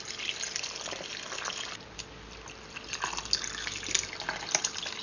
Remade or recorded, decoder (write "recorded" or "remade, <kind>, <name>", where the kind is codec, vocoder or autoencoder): recorded